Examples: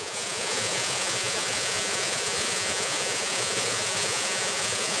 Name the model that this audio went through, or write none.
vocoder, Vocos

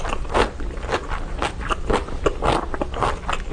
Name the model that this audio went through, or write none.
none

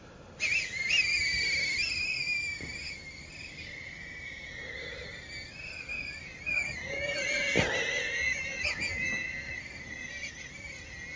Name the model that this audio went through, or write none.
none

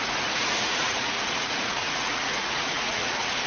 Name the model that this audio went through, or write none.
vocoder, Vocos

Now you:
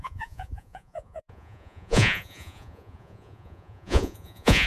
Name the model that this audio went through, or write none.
vocoder, Vocos